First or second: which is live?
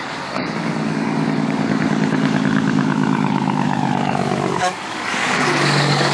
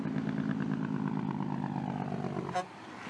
second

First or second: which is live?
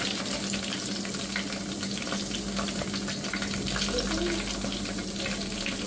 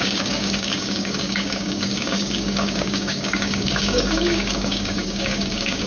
first